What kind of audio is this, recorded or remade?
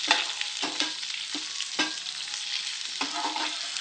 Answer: recorded